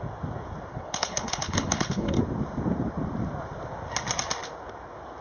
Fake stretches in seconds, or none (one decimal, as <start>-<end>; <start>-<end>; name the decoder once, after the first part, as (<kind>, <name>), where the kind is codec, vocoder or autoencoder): 0.7-2.2 (codec, HILCodec)